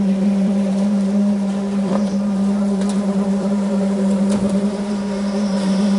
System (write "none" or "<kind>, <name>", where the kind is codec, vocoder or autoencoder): vocoder, BigVGAN v2